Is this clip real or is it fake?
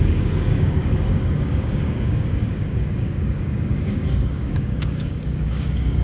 fake